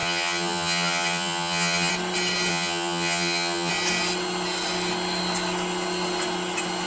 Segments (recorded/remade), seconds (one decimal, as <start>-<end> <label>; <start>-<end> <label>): 0.0-1.9 remade; 1.9-2.5 recorded; 2.5-3.7 remade; 3.7-6.9 recorded